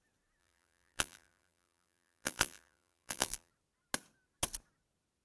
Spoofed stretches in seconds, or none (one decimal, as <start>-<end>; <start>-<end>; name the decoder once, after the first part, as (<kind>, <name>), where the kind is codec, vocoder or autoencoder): 0.4-3.5 (vocoder, BigVGAN v2)